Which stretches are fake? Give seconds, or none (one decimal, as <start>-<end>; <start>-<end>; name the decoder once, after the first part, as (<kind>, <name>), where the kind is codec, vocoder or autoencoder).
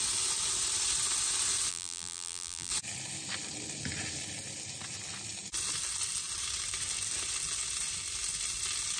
1.7-2.7 (vocoder, BigVGAN v2)